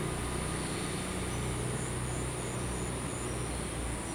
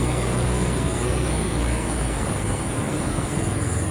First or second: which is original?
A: first